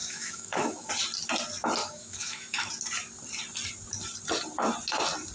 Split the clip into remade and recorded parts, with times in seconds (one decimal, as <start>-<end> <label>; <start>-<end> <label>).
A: 0.0-0.9 remade; 0.9-1.8 recorded; 1.8-2.7 remade; 2.7-5.3 recorded